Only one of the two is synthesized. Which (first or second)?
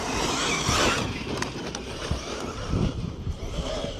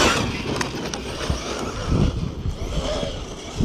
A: first